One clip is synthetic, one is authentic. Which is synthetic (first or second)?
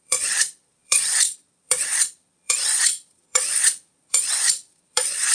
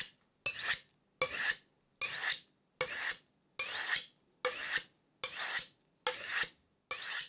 first